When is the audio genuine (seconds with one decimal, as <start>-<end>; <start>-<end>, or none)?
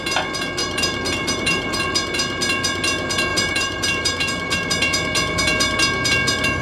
0.0-0.6; 1.8-3.3; 4.7-6.6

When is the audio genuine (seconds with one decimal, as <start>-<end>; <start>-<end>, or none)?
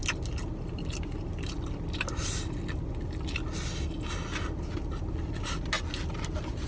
0.0-6.7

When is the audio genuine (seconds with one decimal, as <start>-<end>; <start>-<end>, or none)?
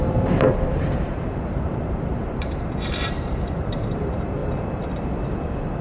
none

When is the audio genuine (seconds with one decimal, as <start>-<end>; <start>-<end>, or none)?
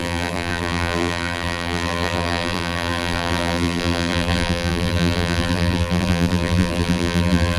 none